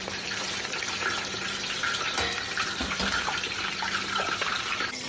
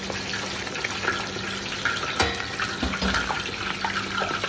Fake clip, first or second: first